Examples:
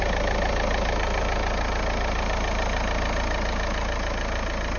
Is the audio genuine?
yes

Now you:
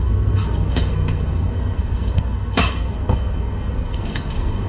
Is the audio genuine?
no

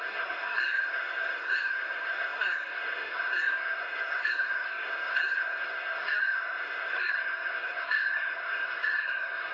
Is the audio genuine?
no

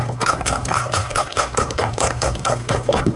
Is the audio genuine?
no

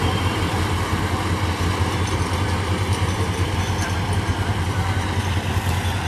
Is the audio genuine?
yes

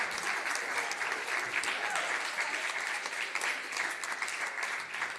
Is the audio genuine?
yes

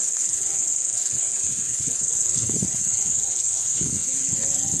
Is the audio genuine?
no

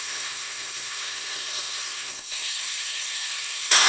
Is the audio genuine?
no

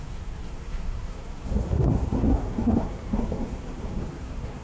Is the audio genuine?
no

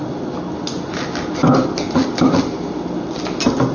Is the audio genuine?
yes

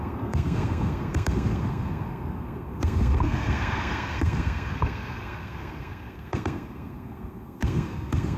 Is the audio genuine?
no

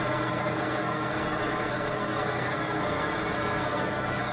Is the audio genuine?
no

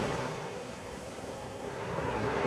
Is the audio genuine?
no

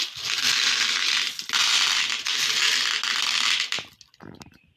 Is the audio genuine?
yes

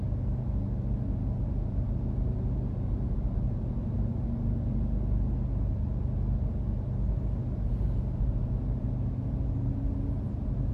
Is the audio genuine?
yes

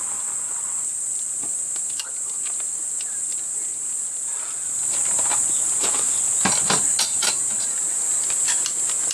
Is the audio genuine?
yes